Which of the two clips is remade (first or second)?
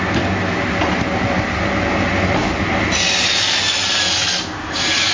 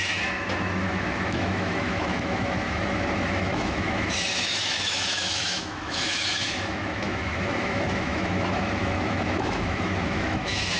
second